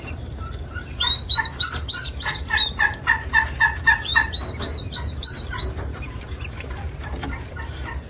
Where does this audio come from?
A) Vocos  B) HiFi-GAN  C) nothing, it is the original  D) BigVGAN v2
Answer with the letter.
D